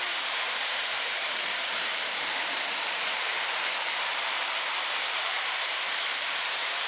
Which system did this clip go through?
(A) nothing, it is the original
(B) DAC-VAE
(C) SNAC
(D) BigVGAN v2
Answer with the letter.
D